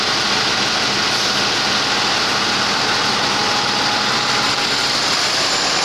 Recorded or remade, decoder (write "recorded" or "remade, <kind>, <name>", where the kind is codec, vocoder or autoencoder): recorded